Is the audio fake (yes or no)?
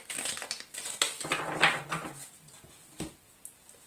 no